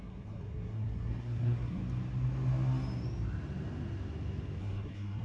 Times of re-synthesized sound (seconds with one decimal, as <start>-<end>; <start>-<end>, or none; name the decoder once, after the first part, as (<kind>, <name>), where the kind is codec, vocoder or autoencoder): 0.0-1.8 (codec, SNAC); 4.6-5.2